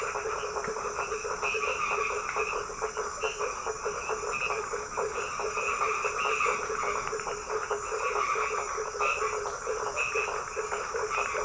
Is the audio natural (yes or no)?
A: yes